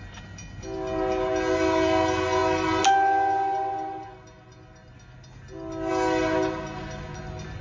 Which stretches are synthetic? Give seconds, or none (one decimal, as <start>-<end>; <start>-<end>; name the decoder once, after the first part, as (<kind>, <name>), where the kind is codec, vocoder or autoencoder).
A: none